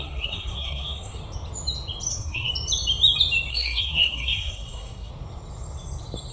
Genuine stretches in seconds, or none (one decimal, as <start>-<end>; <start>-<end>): 1.2-2.1; 2.5-3.5; 5.1-6.3